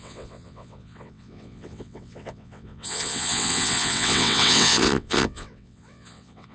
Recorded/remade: remade